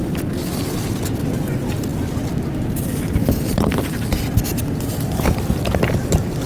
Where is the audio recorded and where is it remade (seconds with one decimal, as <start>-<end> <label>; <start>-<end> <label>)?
0.0-0.9 remade; 0.9-6.5 recorded